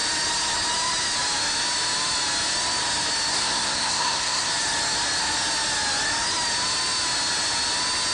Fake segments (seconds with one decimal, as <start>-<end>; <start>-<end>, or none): 3.3-4.5